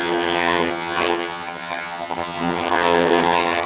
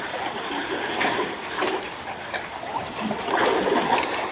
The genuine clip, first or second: second